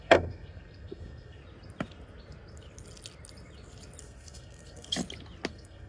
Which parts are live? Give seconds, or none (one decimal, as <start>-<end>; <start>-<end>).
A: 1.4-4.0; 4.9-5.5